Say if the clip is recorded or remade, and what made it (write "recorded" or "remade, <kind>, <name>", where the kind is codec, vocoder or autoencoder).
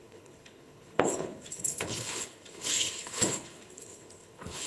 remade, codec, HILCodec